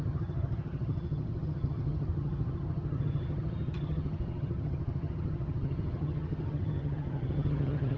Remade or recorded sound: remade